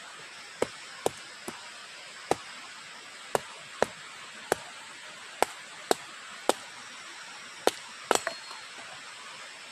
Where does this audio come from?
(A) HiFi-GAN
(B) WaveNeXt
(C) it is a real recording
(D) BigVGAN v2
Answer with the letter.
C